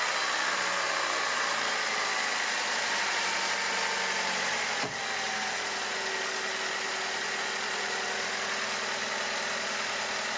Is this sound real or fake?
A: real